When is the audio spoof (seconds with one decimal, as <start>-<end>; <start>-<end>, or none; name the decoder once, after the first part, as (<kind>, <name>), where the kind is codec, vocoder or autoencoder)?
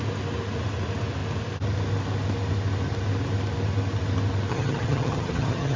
4.5-5.8 (vocoder, HiFi-GAN)